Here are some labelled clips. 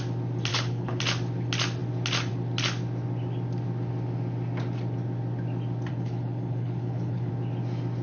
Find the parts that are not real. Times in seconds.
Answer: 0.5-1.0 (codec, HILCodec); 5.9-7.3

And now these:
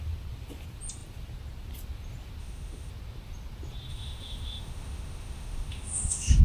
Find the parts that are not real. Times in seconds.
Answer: 2.4-2.9 (autoencoder, DAC-VAE); 3.9-6.4